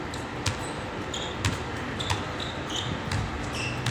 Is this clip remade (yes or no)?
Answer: no